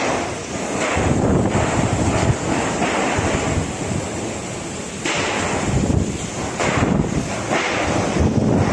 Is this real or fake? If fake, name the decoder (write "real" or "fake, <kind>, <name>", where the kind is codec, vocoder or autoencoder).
real